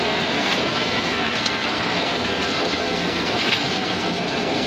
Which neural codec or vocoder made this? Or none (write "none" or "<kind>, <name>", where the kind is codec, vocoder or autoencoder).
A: codec, SNAC